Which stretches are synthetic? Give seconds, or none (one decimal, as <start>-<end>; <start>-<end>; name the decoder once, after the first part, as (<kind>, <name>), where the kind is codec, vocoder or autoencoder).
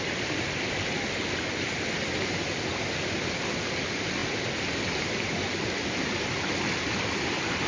none